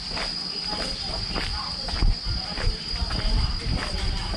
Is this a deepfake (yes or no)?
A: no